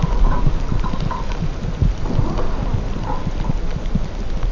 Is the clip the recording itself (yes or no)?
yes